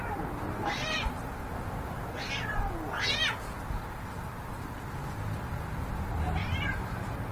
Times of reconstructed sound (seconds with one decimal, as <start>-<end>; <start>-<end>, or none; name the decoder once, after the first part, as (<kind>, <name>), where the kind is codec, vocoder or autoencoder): 6.4-7.3 (vocoder, BigVGAN v2)